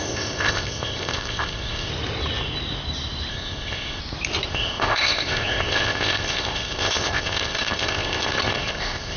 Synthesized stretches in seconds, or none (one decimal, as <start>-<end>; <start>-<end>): 0.0-1.9; 3.3-4.0; 4.5-9.2